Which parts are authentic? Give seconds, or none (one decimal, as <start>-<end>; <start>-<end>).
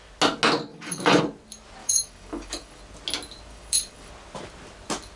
0.0-0.7; 1.2-1.8; 2.8-3.5; 4.1-5.2